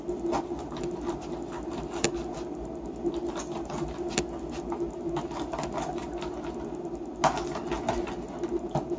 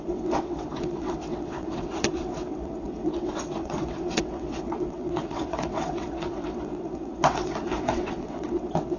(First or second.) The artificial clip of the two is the second